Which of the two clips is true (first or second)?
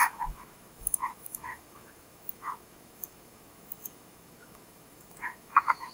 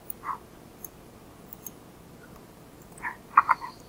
second